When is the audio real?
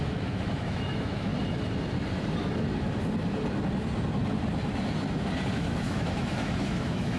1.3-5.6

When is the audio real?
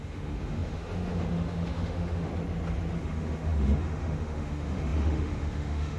2.3-2.9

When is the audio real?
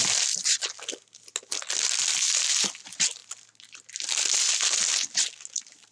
0.0-5.9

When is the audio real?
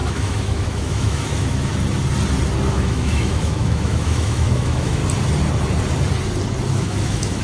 1.7-2.7; 5.0-6.7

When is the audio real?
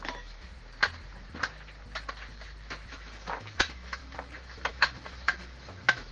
0.5-2.9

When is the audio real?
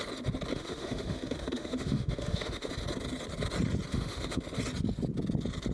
0.0-0.5; 2.7-3.9; 4.4-5.7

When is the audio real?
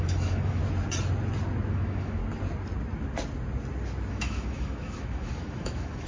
0.6-1.7; 2.2-4.1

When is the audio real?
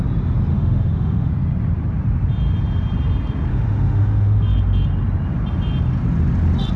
0.0-0.5; 1.3-3.5; 4.4-6.8